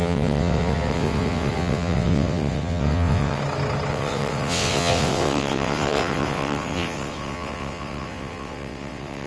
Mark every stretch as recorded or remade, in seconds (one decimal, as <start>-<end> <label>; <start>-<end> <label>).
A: 0.0-3.4 remade; 3.4-3.9 recorded; 3.9-9.3 remade

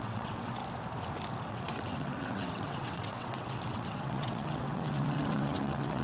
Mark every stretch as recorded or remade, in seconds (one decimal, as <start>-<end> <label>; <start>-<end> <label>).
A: 0.0-0.6 remade; 0.6-1.5 recorded; 1.5-6.0 remade